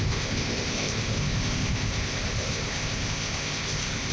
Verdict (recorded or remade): remade